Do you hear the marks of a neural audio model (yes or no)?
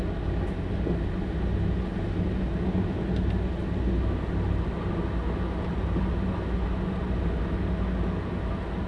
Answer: no